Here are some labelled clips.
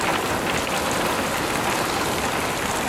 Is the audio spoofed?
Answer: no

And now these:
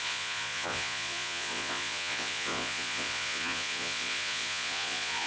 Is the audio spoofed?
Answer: yes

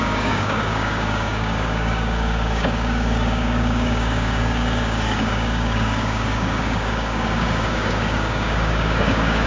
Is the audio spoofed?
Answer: yes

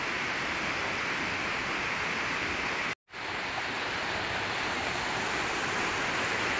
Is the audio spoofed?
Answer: no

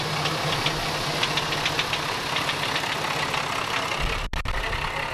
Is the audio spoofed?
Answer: no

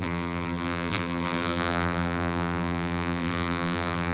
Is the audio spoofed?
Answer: yes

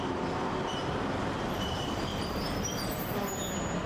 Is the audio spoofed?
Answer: no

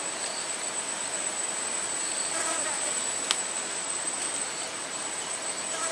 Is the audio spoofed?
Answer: yes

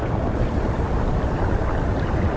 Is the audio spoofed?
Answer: no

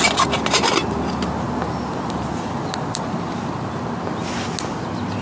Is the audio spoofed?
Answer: no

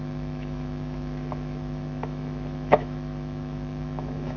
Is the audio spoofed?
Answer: yes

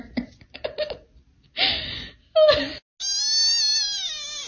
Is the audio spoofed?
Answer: no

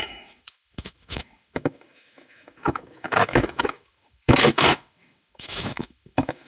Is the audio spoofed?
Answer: yes